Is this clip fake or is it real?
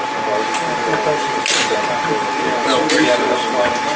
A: real